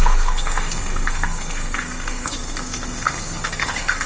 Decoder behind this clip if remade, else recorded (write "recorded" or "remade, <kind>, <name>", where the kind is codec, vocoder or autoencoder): remade, codec, SNAC